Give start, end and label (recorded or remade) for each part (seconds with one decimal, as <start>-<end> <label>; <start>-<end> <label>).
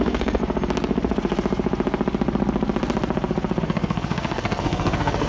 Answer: 0.0-0.4 remade; 0.4-3.6 recorded; 3.6-5.3 remade